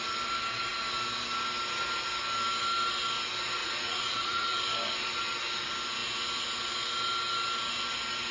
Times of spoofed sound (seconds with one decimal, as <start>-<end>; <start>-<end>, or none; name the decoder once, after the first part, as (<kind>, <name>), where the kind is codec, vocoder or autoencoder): 3.6-4.6 (vocoder, Vocos)